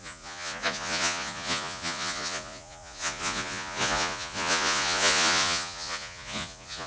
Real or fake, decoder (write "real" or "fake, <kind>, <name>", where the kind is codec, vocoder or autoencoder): fake, vocoder, Vocos